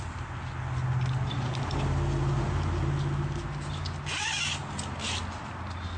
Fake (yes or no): no